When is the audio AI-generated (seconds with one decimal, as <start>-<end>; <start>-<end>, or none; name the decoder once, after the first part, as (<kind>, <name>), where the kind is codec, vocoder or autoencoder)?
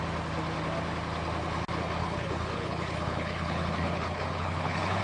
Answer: 2.0-5.0 (codec, HILCodec)